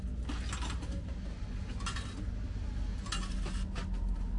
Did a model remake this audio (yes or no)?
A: no